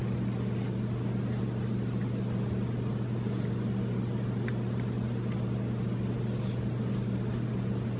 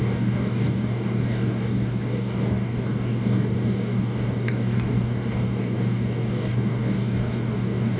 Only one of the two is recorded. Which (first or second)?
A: first